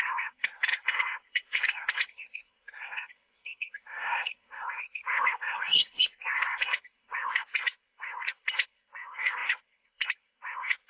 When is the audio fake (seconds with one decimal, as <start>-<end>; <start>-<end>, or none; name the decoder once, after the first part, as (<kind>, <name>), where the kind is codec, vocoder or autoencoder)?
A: 0.0-10.9 (codec, SNAC)